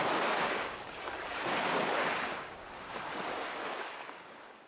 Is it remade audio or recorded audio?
remade